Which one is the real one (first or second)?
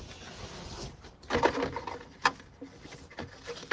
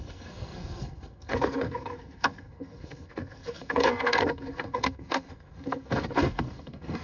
first